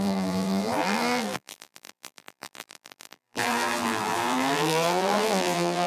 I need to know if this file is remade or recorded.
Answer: remade